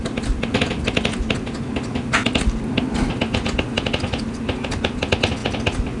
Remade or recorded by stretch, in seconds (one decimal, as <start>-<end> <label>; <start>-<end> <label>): 0.0-6.0 recorded